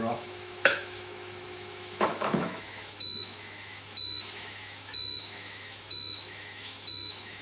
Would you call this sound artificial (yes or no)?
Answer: yes